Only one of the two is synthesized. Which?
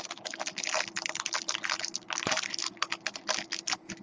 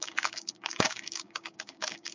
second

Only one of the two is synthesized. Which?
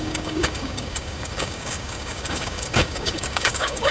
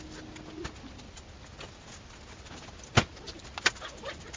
first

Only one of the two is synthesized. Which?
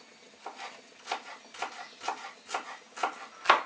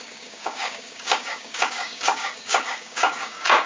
second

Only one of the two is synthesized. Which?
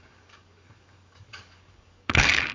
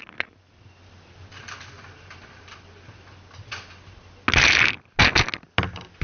first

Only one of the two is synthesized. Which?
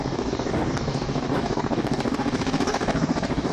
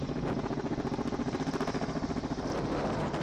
first